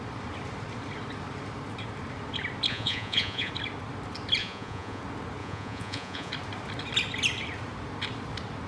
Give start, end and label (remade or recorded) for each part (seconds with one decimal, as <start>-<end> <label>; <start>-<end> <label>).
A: 0.0-2.7 recorded; 2.7-3.5 remade; 3.5-4.4 recorded; 4.4-5.0 remade; 5.0-5.4 recorded; 5.4-6.3 remade; 6.3-8.7 recorded